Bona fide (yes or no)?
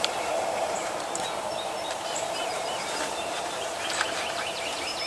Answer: no